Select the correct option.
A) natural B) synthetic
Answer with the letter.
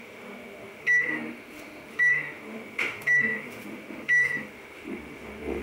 B